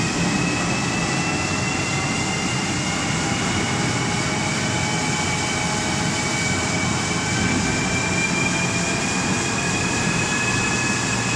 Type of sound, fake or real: real